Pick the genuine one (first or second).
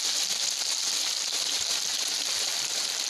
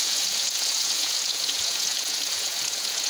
first